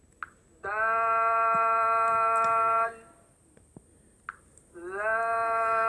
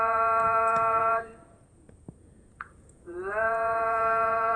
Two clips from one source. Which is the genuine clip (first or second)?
first